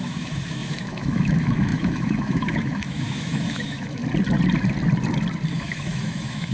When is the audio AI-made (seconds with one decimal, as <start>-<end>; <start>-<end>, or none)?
0.0-4.0; 5.5-6.5